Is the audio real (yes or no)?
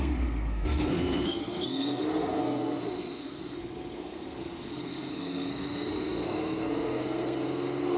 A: no